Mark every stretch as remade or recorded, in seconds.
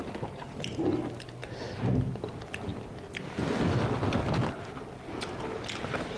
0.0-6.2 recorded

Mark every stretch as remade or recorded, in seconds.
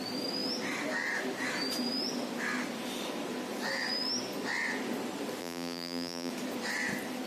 0.0-5.4 recorded; 5.4-6.3 remade; 6.3-7.3 recorded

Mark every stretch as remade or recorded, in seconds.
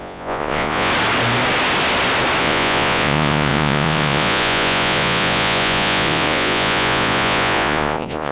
0.0-0.9 remade; 0.9-2.4 recorded; 2.4-8.3 remade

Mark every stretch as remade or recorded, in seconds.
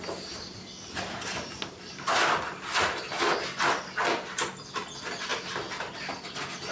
0.0-6.7 recorded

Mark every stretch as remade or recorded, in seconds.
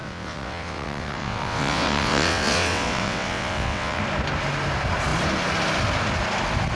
0.0-4.0 remade; 4.0-6.7 recorded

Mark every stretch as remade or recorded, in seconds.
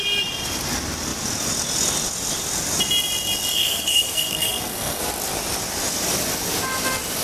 0.0-3.5 recorded; 3.5-5.0 remade; 5.0-7.2 recorded